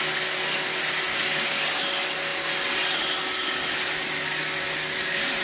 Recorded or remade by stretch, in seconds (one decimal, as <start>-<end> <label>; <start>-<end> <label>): 0.0-1.1 recorded; 1.1-1.8 remade; 1.8-5.4 recorded

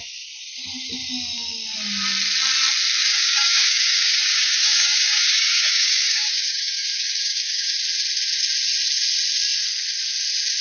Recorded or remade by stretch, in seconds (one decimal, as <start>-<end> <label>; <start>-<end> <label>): 0.0-3.0 recorded; 3.0-7.8 remade; 7.8-10.6 recorded

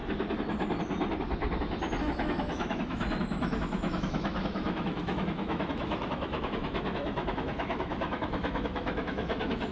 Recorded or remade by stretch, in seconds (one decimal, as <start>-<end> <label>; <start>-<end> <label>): 0.0-2.0 recorded; 2.0-9.7 remade